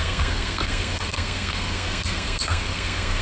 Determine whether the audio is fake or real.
fake